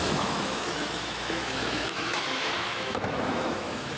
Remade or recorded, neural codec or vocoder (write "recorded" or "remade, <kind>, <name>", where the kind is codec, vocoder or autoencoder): remade, autoencoder, DAC-VAE